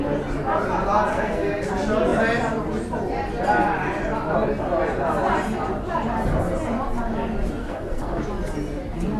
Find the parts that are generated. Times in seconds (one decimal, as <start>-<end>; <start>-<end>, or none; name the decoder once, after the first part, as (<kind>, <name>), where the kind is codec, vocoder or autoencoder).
1.1-1.7 (codec, SNAC); 7.6-8.2